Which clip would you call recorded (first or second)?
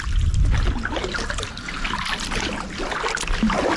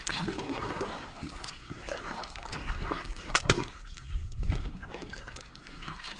first